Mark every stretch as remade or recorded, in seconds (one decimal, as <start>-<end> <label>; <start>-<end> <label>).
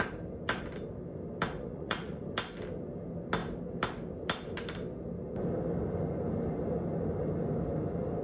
0.0-1.6 recorded; 1.6-2.2 remade; 2.2-8.2 recorded